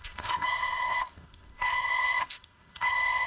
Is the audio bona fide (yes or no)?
no